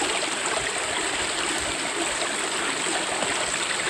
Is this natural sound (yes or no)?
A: yes